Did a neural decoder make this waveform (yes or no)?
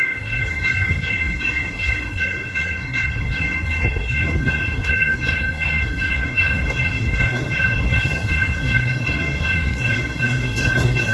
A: yes